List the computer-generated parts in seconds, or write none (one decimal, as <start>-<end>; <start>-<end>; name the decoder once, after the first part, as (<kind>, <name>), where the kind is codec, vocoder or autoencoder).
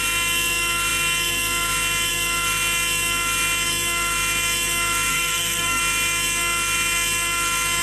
5.1-5.8 (codec, SNAC)